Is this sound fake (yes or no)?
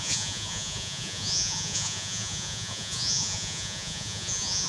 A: yes